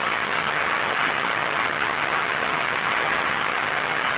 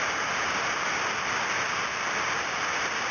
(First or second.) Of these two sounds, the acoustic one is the second